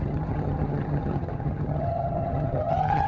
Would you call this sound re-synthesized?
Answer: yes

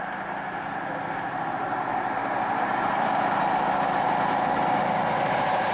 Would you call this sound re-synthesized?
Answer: no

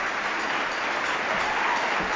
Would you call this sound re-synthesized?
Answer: no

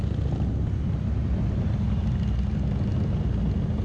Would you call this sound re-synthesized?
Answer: no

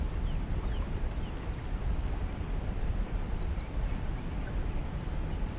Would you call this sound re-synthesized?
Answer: yes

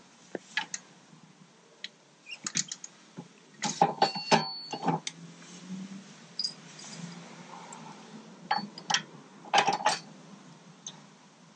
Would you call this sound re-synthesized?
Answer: no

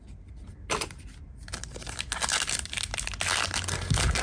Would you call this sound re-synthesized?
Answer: no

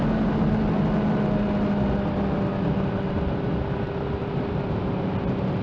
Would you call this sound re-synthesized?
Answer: no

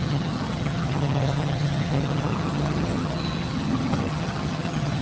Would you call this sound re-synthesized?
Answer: yes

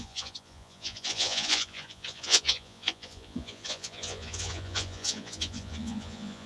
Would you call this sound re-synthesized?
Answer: yes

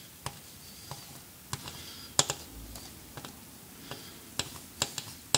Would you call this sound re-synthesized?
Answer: no